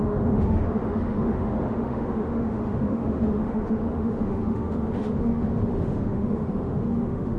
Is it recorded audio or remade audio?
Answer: remade